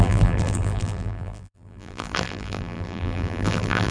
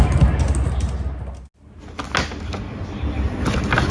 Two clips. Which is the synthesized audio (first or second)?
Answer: first